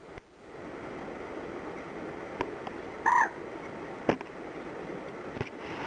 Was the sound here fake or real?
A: real